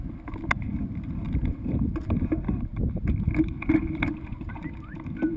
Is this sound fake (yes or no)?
no